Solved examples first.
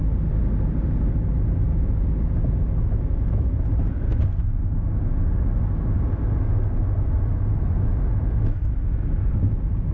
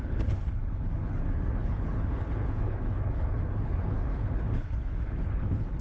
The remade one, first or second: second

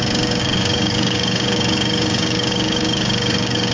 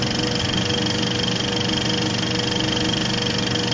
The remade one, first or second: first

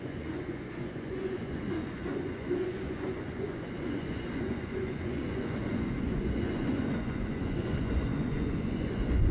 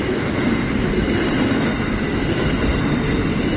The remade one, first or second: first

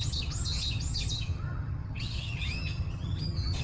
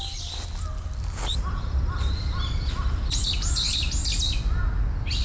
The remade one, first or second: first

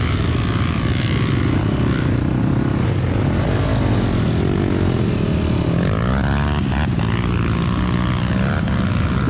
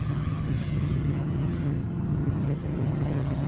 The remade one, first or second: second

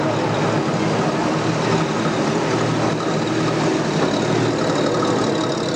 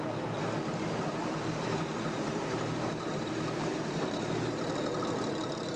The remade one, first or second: second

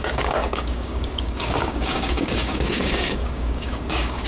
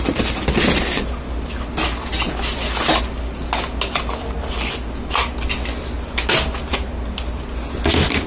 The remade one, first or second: first